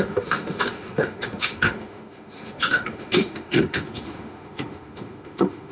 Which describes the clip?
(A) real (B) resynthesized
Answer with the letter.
B